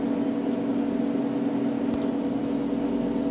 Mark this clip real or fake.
real